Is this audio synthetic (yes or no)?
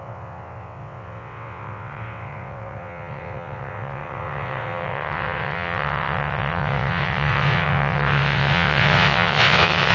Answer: yes